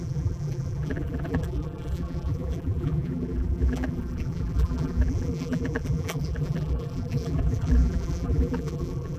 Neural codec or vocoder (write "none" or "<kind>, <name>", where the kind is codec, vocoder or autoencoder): vocoder, BigVGAN v2